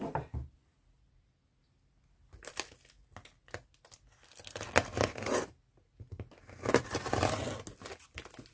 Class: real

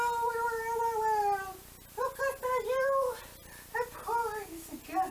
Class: real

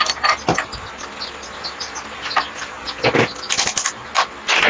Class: real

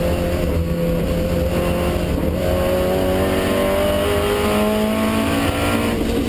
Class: real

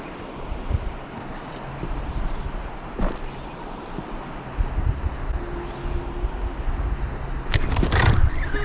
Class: real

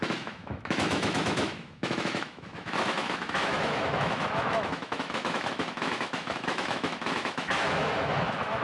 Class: fake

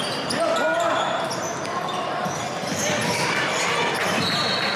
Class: real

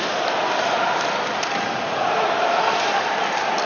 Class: real